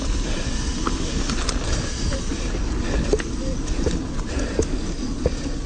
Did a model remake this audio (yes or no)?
no